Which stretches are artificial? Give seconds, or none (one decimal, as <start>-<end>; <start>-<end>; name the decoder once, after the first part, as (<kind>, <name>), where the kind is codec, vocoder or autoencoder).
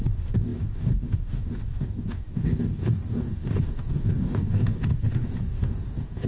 0.0-6.3 (codec, DAC)